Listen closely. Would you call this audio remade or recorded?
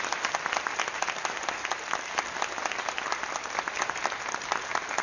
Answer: recorded